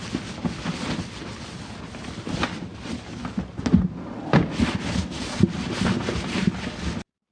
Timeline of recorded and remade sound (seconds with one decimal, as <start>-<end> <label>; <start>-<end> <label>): 0.0-7.3 recorded